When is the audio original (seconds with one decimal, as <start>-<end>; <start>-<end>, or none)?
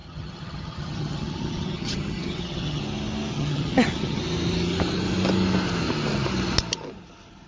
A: 2.8-3.3; 4.2-7.5